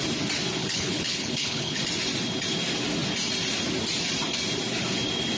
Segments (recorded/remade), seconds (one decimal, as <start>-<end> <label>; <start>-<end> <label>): 0.0-0.6 recorded; 0.6-1.8 remade; 1.8-5.4 recorded